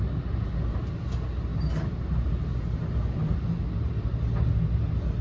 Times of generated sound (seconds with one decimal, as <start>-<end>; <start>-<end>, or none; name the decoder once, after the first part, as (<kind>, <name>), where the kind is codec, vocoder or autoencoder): none